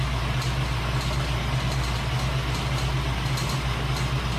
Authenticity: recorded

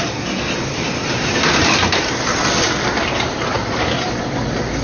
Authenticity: recorded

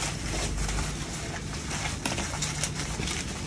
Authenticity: recorded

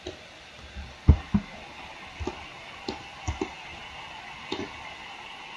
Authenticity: recorded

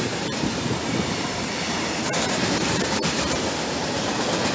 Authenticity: remade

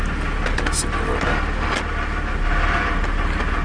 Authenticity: recorded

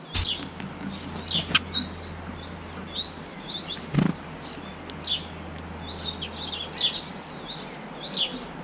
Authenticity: recorded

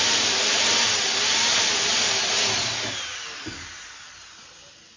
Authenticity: recorded